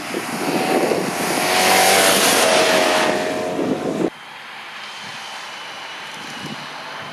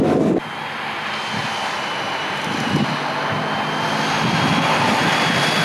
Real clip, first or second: second